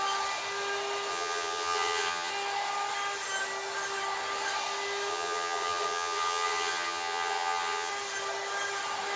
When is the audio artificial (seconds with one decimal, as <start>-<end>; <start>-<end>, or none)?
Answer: 1.1-2.3; 5.1-7.9